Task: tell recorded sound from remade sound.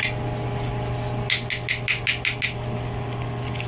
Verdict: recorded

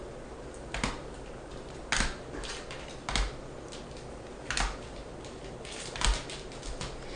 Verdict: recorded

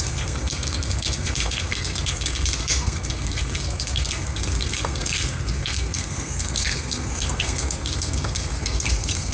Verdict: remade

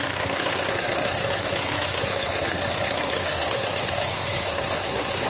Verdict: remade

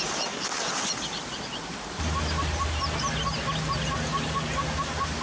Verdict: recorded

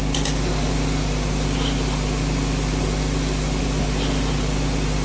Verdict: recorded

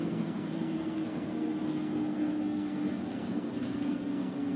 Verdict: remade